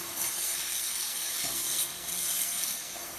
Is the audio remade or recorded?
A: remade